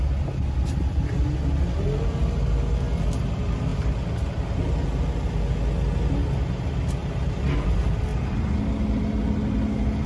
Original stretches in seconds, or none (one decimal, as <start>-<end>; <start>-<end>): 0.0-8.1; 8.6-10.1